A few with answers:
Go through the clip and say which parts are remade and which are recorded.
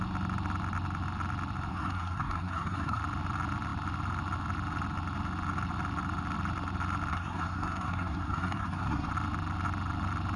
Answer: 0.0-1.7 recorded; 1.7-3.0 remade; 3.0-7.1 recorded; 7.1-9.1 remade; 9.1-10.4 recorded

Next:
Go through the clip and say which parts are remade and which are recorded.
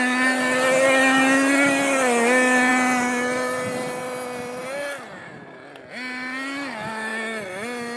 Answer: 0.0-8.0 recorded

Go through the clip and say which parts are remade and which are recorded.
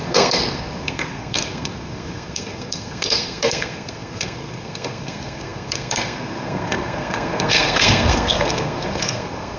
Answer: 0.0-9.6 remade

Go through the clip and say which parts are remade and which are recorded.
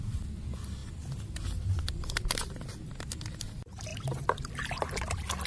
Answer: 0.0-5.5 recorded